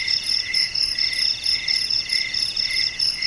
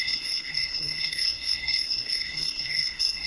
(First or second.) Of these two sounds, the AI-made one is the second